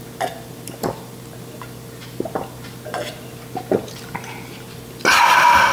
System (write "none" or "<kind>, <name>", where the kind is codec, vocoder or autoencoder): none